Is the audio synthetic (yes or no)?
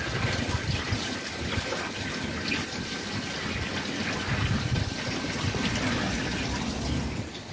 no